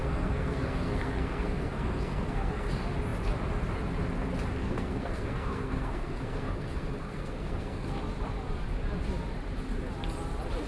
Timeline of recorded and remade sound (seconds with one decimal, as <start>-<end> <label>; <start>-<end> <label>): 0.0-2.7 remade; 2.7-4.6 recorded; 4.6-8.0 remade; 8.0-10.7 recorded